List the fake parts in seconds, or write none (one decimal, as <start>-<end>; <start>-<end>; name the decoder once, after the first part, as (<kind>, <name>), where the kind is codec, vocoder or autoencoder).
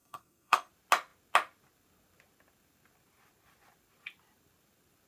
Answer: 0.0-0.7 (codec, SNAC)